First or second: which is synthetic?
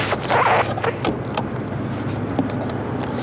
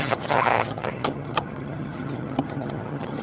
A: second